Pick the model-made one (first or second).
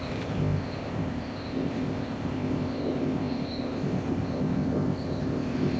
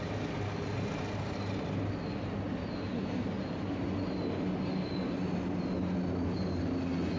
first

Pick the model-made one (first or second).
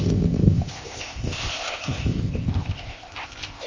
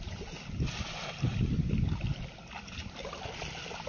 first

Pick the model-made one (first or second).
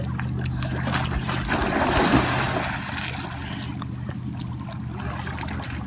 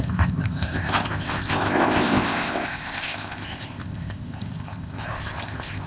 second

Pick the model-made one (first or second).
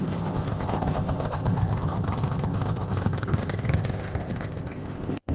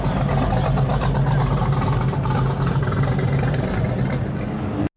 first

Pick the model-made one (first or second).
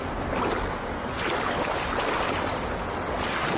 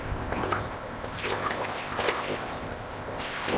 second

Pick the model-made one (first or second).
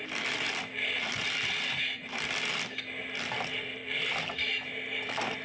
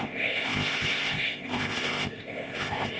second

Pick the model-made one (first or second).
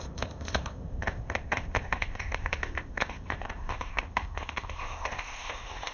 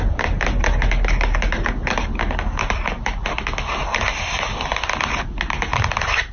first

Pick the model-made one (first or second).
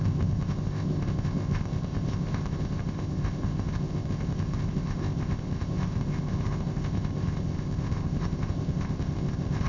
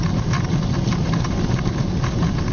first